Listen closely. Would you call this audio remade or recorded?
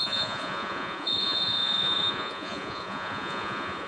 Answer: remade